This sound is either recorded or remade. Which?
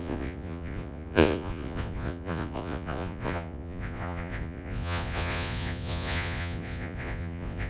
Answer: remade